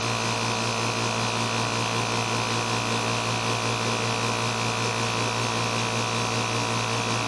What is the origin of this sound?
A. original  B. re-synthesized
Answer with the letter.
A